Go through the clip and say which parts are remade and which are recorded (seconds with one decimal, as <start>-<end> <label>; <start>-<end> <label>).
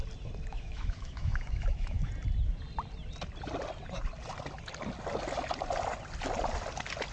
0.0-0.5 recorded; 0.5-2.1 remade; 2.1-7.1 recorded